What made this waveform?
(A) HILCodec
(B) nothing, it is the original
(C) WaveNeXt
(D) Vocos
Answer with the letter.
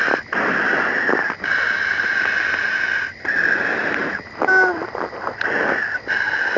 B